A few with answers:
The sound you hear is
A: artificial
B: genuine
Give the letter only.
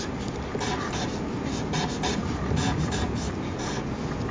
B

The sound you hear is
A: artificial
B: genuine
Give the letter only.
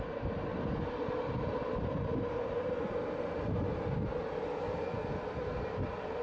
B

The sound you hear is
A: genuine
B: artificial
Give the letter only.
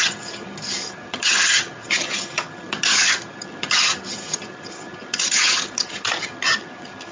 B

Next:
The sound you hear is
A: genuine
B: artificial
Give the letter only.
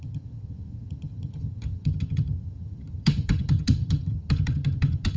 B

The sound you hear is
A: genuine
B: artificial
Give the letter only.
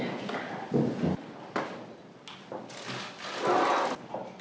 A